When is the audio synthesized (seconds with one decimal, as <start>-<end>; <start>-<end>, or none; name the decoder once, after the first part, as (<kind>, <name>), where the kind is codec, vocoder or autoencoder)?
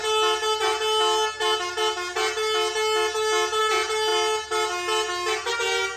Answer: none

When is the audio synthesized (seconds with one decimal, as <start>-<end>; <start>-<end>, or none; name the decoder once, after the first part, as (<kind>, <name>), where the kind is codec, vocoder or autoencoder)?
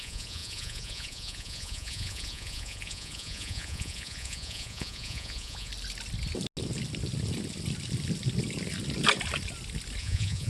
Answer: 0.0-5.7 (vocoder, Vocos); 10.0-10.5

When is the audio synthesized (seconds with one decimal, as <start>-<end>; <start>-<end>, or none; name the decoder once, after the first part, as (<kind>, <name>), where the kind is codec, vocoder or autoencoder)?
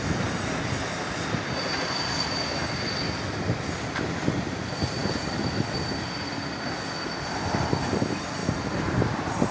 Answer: none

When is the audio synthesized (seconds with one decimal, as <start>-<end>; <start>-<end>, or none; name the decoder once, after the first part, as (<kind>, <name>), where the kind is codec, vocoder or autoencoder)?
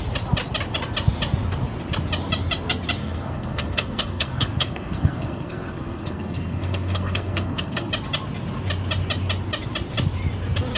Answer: 3.0-7.9 (codec, SNAC)